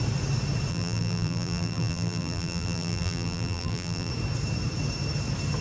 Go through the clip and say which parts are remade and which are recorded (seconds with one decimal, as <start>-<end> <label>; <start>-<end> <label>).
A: 0.0-0.7 recorded; 0.7-4.1 remade; 4.1-5.6 recorded